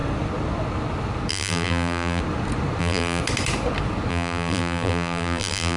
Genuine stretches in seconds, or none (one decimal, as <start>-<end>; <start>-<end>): 0.0-1.3; 2.2-2.8; 3.2-4.1